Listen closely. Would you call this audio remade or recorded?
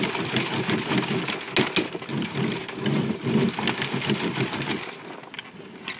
recorded